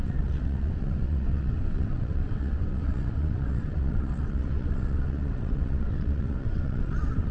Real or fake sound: fake